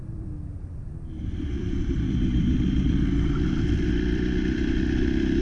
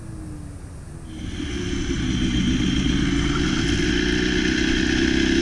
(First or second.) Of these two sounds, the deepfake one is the first